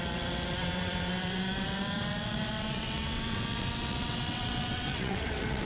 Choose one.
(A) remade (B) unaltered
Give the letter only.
A